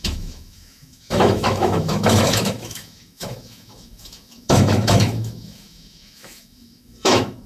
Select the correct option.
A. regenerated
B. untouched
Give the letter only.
A